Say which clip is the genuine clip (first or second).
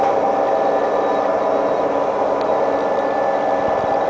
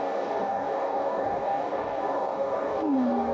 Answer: first